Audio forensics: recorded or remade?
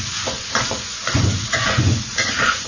remade